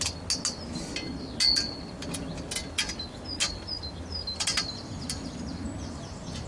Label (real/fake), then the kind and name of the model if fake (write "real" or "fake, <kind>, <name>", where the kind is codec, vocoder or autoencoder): real